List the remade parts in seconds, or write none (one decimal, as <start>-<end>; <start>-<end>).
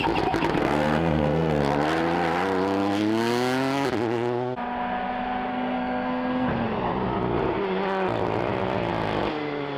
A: 0.6-1.6; 5.5-6.5